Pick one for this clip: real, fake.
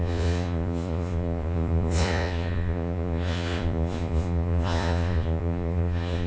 fake